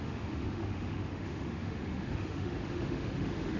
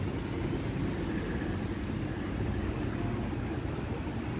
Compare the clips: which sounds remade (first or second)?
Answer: first